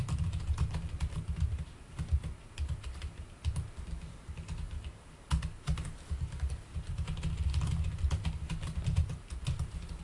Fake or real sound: fake